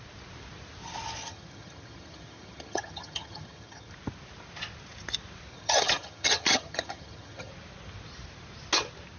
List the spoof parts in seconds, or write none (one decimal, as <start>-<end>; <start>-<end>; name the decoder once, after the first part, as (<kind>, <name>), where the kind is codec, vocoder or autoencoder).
1.2-3.9 (vocoder, HiFi-GAN); 5.5-7.5